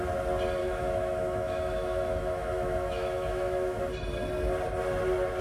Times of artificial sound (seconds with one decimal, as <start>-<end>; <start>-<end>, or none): 0.6-3.8